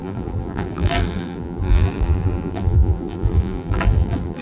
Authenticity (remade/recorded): remade